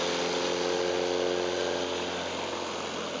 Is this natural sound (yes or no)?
yes